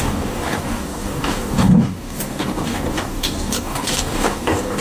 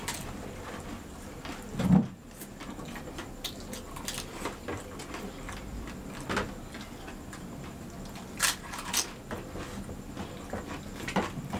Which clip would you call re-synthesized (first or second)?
first